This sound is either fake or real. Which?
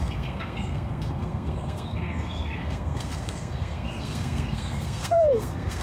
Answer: fake